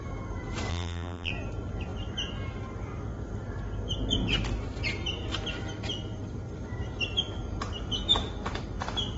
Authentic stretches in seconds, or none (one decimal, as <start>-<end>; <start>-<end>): 0.0-0.7; 1.3-9.2